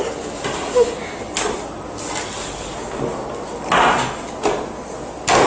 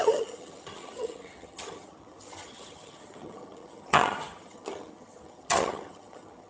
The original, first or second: first